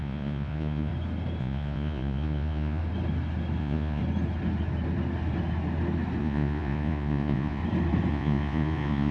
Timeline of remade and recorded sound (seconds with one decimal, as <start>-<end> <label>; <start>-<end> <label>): 0.0-0.9 remade; 0.9-1.4 recorded; 1.4-2.8 remade; 2.8-3.6 recorded; 3.6-4.0 remade; 4.0-6.2 recorded; 6.2-7.6 remade; 7.6-8.1 recorded; 8.1-9.1 remade